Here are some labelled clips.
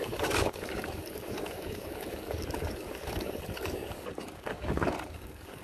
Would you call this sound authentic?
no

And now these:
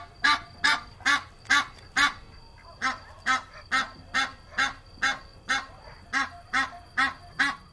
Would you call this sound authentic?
yes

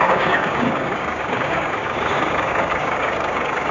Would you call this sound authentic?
no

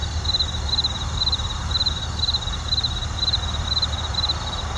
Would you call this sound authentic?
yes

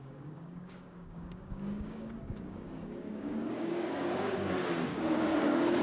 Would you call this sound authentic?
no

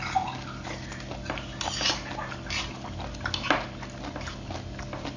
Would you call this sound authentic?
yes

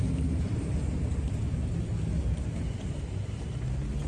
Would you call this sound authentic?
yes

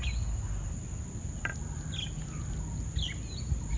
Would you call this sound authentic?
yes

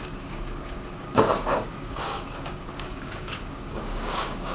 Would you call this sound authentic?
no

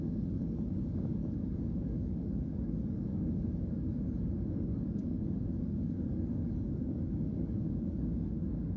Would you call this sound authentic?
no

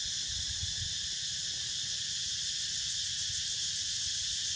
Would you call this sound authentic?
yes